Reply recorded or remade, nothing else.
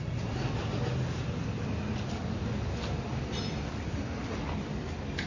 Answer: recorded